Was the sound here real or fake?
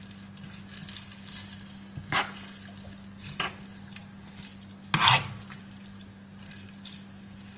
real